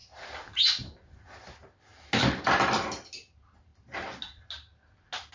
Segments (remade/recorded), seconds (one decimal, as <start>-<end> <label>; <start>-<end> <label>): 0.0-5.3 recorded